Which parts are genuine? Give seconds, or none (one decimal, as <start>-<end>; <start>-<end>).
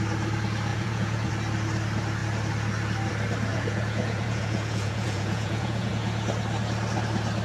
0.0-0.7; 1.3-3.5; 5.9-7.4